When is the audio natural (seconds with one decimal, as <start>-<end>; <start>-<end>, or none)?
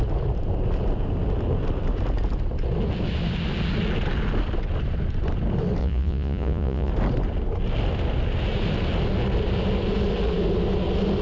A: 0.0-5.8; 6.9-11.2